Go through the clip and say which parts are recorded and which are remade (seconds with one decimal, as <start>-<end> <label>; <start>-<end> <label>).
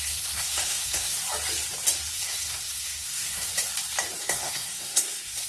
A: 0.0-1.2 remade; 1.2-2.1 recorded; 2.1-3.5 remade; 3.5-4.2 recorded; 4.2-5.5 remade